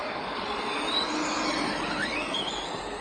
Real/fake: real